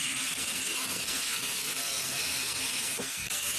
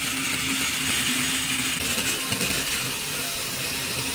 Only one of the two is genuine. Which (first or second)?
second